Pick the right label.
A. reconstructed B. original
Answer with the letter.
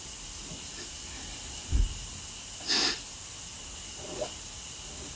A